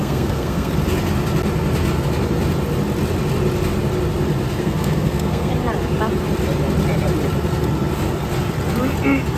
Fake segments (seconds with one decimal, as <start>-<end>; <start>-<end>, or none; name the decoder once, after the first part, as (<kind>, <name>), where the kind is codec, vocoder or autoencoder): 0.0-0.7 (codec, SNAC); 4.6-5.5